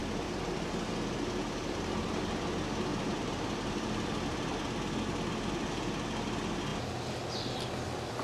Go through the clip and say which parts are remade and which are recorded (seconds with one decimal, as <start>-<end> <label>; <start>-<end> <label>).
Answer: 0.0-2.9 recorded; 2.9-4.1 remade; 4.1-8.2 recorded

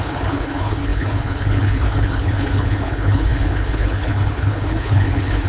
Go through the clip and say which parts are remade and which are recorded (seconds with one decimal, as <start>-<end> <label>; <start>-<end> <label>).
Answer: 0.0-5.5 remade

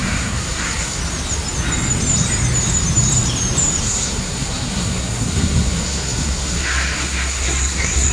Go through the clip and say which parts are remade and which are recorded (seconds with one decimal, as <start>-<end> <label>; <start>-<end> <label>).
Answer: 0.0-1.0 remade; 1.0-3.8 recorded; 3.8-8.1 remade

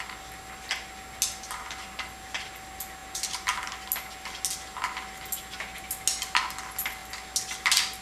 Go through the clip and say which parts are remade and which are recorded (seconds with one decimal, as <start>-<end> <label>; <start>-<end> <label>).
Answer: 0.0-8.0 recorded